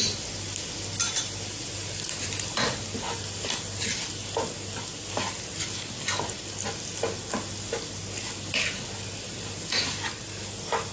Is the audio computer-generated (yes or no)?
no